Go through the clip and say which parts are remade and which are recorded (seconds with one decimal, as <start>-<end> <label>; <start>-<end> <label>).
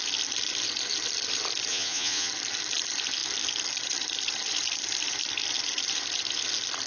0.0-1.7 recorded; 1.7-2.3 remade; 2.3-6.9 recorded